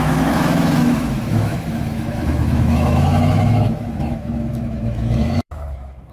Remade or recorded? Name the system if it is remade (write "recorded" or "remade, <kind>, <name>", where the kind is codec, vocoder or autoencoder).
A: remade, autoencoder, DAC-VAE